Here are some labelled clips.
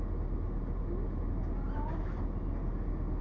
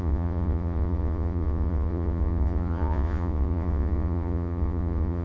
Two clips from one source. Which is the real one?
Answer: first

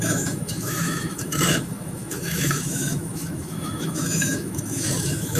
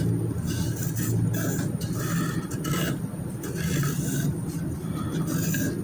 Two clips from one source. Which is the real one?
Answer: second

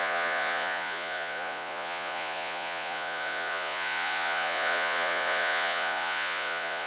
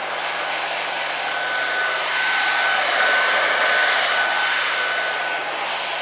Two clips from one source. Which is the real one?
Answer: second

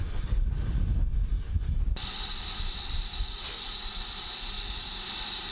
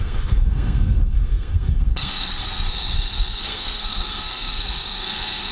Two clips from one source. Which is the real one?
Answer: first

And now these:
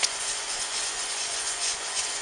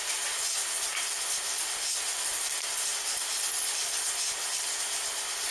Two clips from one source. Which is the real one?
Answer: second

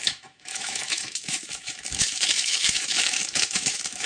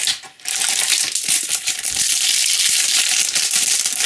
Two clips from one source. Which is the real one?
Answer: second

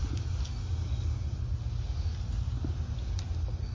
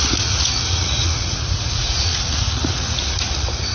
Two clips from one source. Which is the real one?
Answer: first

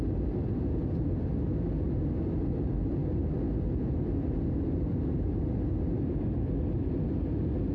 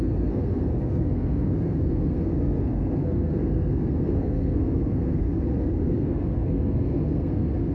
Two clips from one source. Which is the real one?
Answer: first